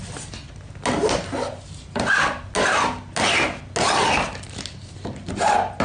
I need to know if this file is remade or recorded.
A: recorded